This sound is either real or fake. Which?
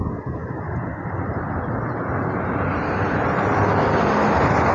real